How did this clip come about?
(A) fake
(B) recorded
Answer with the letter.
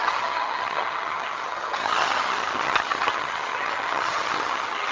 A